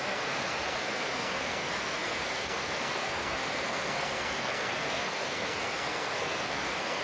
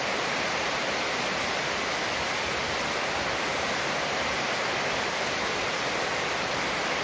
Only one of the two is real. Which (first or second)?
second